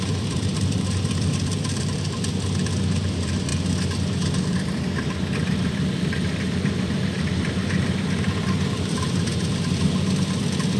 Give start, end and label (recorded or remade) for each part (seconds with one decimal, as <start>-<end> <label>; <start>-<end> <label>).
0.0-3.5 remade; 3.5-4.4 recorded; 4.4-9.3 remade; 9.3-9.8 recorded; 9.8-10.8 remade